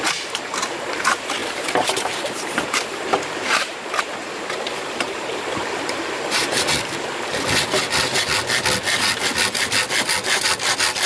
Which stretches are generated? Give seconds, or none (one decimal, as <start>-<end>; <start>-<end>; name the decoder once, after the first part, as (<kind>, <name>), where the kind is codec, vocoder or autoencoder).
1.4-6.6 (vocoder, BigVGAN v2)